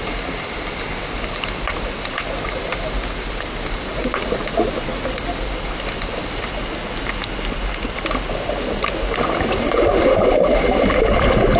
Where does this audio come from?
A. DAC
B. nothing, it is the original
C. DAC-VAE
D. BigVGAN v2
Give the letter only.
B